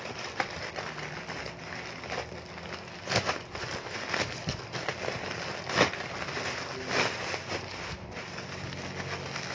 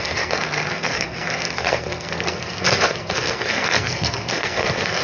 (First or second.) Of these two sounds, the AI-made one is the second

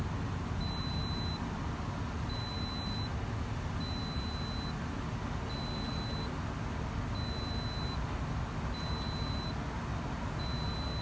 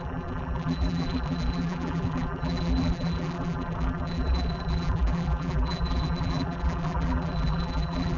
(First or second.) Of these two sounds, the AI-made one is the second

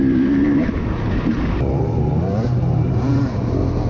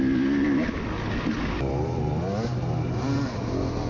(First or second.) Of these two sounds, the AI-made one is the first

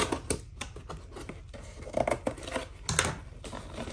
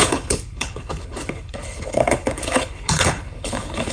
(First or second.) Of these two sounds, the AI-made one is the second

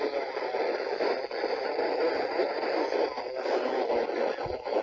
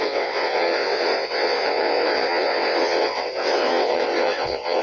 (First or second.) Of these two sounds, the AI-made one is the second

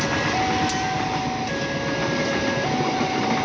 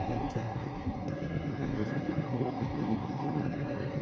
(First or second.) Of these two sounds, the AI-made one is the second